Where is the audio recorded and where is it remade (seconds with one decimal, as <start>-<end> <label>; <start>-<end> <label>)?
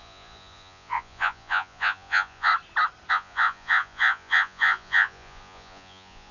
0.0-2.5 remade; 2.5-3.1 recorded; 3.1-6.3 remade